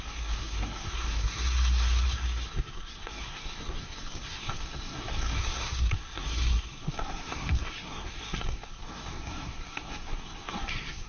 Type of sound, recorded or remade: remade